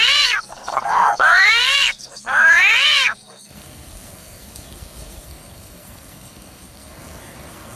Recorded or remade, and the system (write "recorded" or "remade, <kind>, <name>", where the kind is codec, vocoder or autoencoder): remade, codec, SNAC